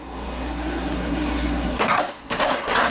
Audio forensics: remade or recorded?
remade